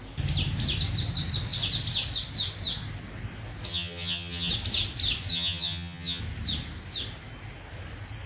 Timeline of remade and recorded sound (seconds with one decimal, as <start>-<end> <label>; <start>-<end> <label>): 0.0-3.7 recorded; 3.7-4.5 remade; 4.5-5.3 recorded; 5.3-6.2 remade; 6.2-8.3 recorded